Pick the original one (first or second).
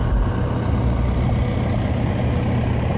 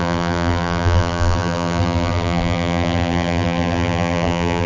first